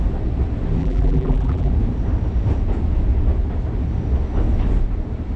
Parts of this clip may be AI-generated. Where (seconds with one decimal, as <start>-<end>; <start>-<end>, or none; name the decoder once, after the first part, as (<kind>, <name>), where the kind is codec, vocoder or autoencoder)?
0.8-1.7 (vocoder, BigVGAN v2)